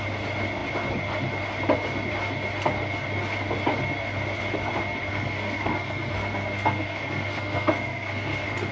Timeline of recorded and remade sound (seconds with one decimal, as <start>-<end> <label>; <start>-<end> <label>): 0.0-5.1 recorded; 5.1-8.7 remade